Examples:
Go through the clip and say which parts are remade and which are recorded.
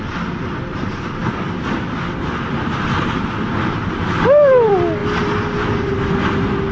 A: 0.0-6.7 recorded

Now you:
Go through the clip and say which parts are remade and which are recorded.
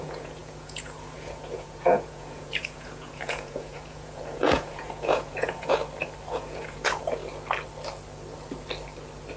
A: 0.0-5.8 remade; 5.8-6.3 recorded; 6.3-7.2 remade; 7.2-9.4 recorded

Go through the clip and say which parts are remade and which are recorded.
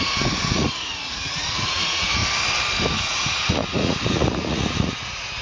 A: 0.0-2.2 remade; 2.2-2.9 recorded; 2.9-5.4 remade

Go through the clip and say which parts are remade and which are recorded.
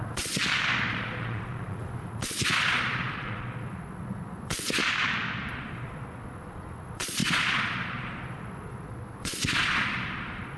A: 0.0-0.4 remade; 0.4-0.9 recorded; 0.9-4.8 remade; 4.8-5.5 recorded; 5.5-10.6 remade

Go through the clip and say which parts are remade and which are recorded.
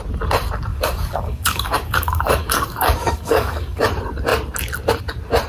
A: 0.0-0.7 recorded; 0.7-3.8 remade; 3.8-5.5 recorded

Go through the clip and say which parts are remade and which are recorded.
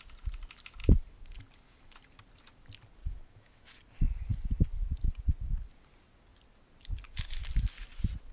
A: 0.0-3.0 recorded; 3.0-3.8 remade; 3.8-8.3 recorded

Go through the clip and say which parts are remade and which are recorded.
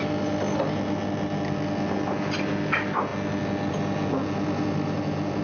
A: 0.0-5.4 recorded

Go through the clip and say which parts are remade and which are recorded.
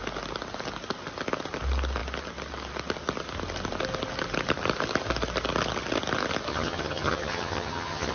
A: 0.0-6.5 recorded; 6.5-8.1 remade